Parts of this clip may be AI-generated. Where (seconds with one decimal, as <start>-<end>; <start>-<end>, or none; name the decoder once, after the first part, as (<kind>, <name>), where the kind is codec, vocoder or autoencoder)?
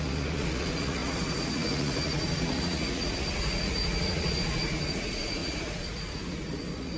0.0-7.0 (vocoder, Vocos)